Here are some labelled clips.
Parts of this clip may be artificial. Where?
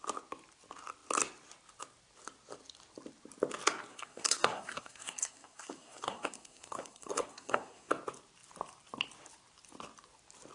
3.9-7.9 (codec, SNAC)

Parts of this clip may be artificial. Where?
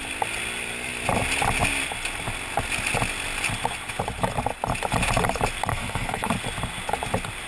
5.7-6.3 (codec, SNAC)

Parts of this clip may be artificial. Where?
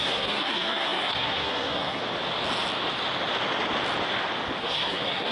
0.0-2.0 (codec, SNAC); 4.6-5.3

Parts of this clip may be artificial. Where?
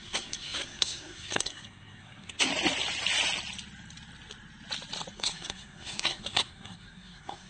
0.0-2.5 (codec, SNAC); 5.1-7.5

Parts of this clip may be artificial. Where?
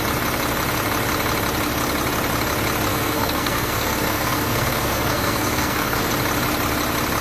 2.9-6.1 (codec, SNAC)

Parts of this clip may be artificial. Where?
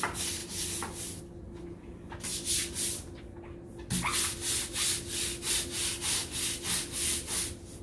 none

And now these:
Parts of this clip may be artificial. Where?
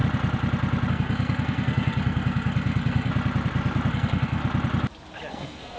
0.9-3.1 (codec, SNAC); 3.9-4.4; 5.3-5.8